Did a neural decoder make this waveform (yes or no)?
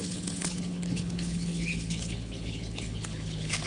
yes